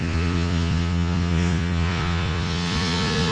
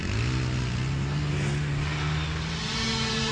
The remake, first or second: first